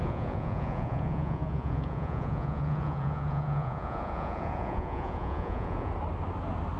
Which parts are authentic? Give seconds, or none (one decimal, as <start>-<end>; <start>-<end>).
5.9-6.8